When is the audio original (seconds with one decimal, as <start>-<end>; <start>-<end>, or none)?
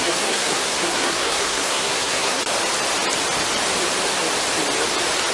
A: 2.4-5.3